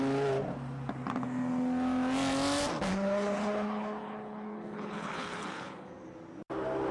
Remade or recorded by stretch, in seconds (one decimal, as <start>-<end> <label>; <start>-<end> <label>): 0.0-2.9 recorded; 2.9-5.9 remade; 5.9-6.9 recorded